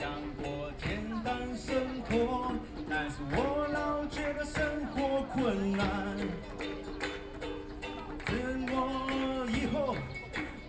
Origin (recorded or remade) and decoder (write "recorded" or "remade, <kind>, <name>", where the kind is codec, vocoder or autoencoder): recorded